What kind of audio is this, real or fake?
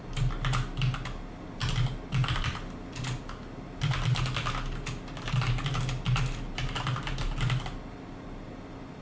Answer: real